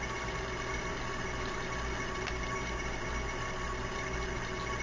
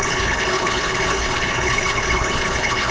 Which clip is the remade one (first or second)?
second